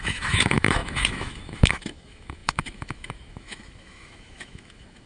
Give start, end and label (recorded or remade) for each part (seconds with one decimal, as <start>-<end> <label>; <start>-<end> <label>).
0.0-5.1 remade